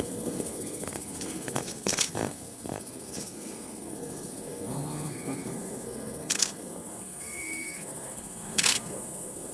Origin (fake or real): fake